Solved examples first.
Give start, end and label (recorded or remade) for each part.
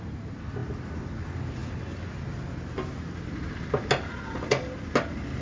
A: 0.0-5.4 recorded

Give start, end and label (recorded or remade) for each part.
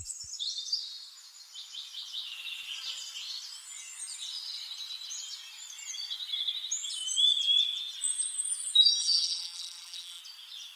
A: 0.0-9.0 recorded; 9.0-10.2 remade; 10.2-10.8 recorded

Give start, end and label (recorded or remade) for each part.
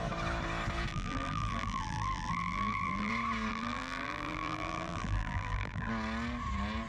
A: 0.0-0.9 recorded; 0.9-3.1 remade; 3.1-3.5 recorded; 3.5-5.9 remade; 5.9-6.9 recorded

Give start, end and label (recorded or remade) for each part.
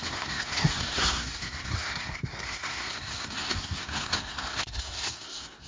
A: 0.0-5.7 remade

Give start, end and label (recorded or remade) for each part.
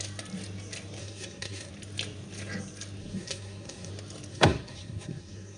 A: 0.0-1.0 recorded; 1.0-1.7 remade; 1.7-3.0 recorded; 3.0-3.9 remade; 3.9-4.3 recorded; 4.3-5.6 remade